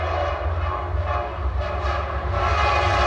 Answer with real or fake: real